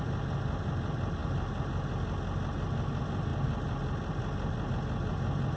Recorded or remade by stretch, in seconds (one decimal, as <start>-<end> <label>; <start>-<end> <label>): 0.0-5.6 recorded